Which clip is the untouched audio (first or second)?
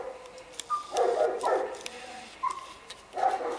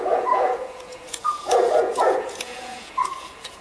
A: first